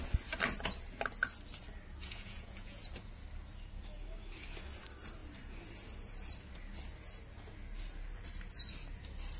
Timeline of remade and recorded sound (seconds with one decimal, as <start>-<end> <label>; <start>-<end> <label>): 0.0-2.0 recorded; 2.0-2.9 remade; 2.9-9.4 recorded